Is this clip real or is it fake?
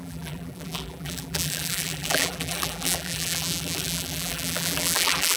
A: fake